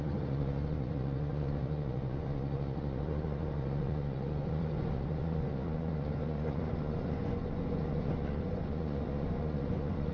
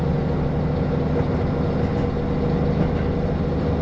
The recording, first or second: second